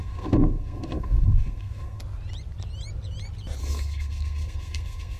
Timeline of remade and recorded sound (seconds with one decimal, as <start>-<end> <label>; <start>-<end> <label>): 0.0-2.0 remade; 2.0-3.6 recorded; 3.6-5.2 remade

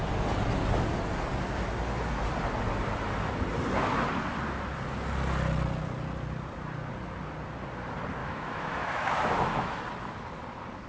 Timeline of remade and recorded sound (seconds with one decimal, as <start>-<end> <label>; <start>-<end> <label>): 0.0-8.2 recorded; 8.2-9.8 remade; 9.8-10.9 recorded

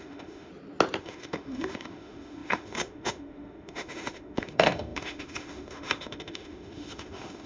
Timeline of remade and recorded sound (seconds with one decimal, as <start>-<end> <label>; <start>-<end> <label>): 0.0-0.5 remade; 0.5-1.0 recorded; 1.0-7.5 remade